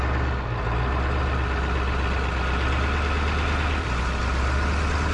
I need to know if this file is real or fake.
real